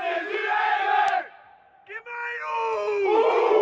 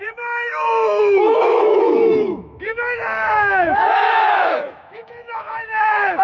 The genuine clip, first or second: first